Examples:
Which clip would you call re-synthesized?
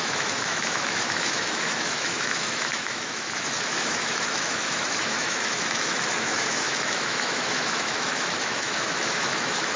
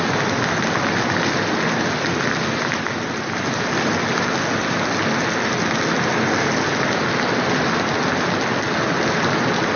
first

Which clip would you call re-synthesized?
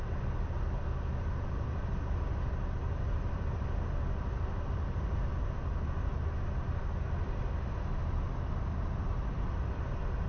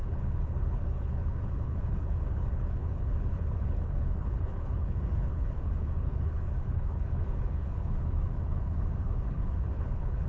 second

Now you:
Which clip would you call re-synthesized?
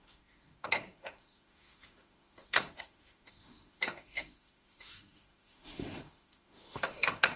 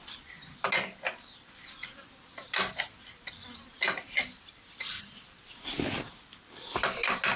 first